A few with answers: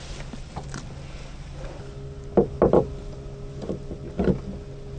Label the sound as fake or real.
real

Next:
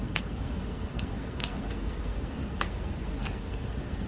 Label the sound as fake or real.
fake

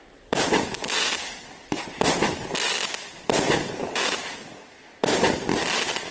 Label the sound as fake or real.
fake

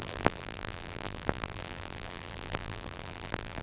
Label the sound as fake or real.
fake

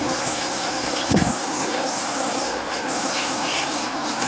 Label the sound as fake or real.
fake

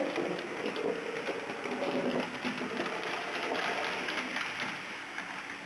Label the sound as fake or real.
real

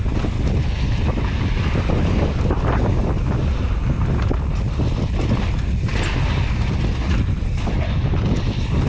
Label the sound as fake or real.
real